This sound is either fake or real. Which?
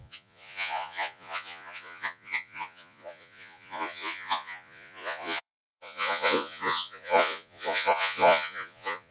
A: fake